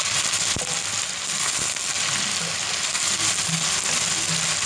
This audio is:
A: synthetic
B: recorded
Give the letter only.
B